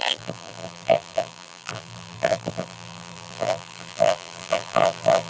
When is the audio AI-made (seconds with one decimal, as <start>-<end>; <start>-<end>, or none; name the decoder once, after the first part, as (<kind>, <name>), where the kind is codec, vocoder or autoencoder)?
0.0-5.3 (vocoder, BigVGAN v2)